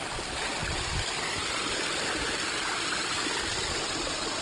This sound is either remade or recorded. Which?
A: recorded